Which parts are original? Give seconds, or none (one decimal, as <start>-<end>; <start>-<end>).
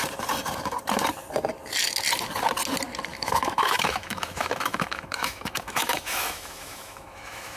0.0-3.1